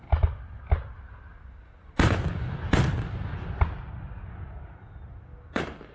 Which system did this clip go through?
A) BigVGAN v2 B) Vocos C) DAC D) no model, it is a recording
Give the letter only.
D